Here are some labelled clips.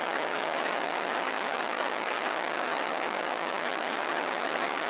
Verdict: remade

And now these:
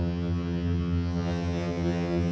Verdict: remade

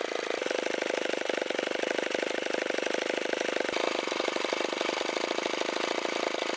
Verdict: recorded